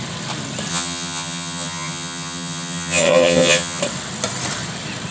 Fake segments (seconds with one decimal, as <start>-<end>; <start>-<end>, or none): 0.7-3.8